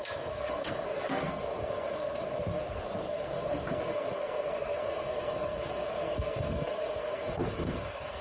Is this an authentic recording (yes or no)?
no